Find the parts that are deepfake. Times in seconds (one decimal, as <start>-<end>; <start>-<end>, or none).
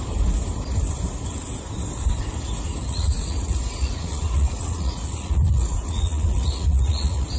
2.8-7.4